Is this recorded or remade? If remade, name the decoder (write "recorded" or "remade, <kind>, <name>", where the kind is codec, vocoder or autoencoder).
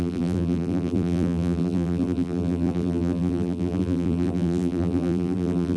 remade, vocoder, BigVGAN v2